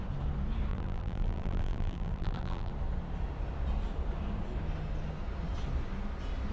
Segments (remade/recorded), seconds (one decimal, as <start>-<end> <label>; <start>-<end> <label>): 0.0-0.7 recorded; 0.7-2.7 remade; 2.7-6.5 recorded